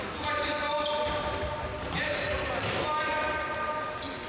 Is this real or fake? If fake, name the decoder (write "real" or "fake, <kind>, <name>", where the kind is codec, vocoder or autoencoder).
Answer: real